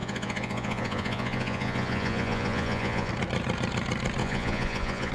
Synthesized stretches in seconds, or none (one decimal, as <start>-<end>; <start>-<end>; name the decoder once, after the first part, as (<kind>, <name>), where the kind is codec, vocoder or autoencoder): 0.0-3.1 (vocoder, Vocos); 4.2-5.1